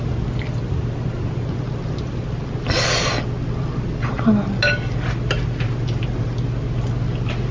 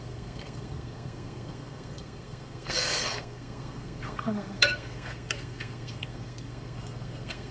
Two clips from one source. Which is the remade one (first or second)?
second